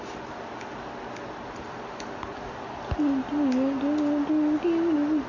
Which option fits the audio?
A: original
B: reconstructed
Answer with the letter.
A